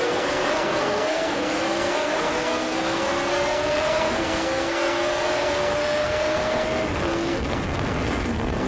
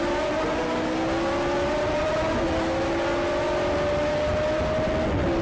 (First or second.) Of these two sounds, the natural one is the second